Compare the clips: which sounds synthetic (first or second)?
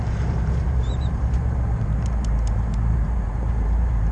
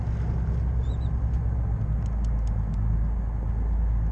first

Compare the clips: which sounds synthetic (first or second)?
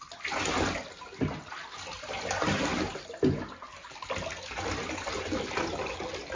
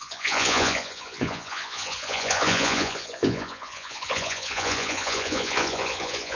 second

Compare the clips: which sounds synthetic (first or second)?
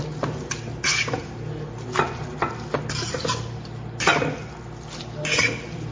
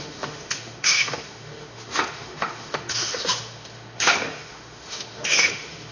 second